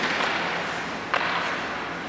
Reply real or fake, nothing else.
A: real